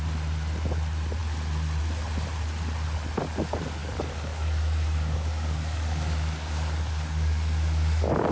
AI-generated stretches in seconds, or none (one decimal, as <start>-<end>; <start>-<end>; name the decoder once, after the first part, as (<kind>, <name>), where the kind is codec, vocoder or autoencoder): 3.8-8.3 (codec, DAC)